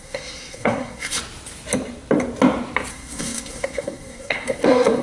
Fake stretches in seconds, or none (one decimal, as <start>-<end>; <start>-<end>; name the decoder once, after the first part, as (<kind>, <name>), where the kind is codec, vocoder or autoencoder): 0.0-1.2 (codec, SNAC); 2.9-5.0